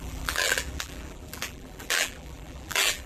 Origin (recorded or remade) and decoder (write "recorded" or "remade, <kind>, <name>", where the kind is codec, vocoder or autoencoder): remade, vocoder, BigVGAN v2